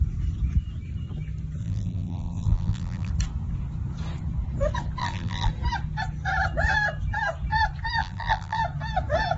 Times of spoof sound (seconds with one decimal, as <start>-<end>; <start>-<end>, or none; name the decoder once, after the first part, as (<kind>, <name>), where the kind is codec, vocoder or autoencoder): 1.6-3.1 (vocoder, BigVGAN v2); 5.0-5.5; 8.0-8.6